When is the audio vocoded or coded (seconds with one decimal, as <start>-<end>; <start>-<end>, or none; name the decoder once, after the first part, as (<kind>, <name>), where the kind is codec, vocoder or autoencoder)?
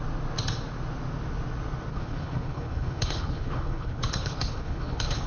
1.9-5.3 (codec, HILCodec)